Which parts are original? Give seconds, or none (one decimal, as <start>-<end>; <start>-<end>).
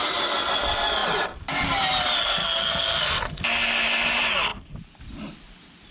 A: 0.0-2.2; 3.4-5.9